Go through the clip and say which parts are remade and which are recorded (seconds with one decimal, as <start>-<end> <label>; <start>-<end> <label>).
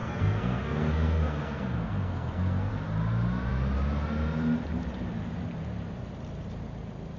0.0-2.7 remade; 2.7-7.2 recorded